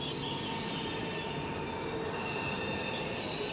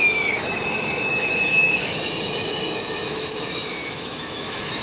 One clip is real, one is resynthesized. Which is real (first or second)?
first